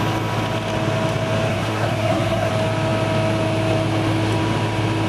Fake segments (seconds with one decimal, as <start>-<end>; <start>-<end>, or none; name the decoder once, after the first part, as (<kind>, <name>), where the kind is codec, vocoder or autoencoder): 1.5-2.5 (codec, SNAC)